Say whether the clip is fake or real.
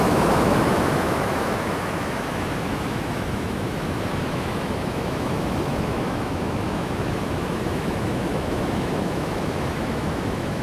fake